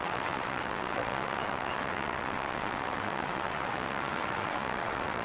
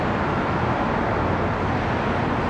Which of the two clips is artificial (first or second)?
first